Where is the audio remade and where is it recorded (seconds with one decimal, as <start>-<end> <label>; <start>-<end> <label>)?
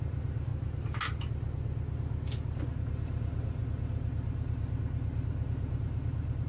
0.0-0.5 remade; 0.5-2.7 recorded; 2.7-6.5 remade